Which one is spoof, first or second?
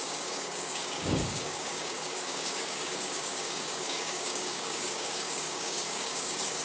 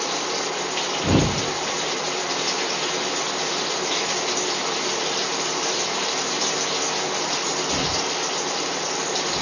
first